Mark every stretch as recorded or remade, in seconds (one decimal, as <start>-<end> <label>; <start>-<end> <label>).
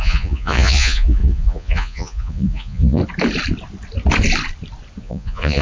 0.0-3.0 remade; 3.0-5.0 recorded; 5.0-5.6 remade